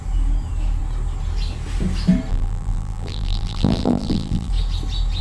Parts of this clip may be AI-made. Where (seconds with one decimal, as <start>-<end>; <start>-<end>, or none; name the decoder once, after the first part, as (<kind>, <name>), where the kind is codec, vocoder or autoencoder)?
2.3-4.5 (vocoder, BigVGAN v2)